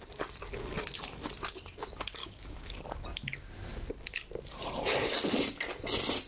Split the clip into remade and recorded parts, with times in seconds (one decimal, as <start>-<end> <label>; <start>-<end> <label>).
0.0-2.2 recorded; 2.2-2.8 remade; 2.8-6.3 recorded